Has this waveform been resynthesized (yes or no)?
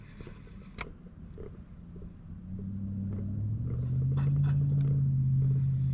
no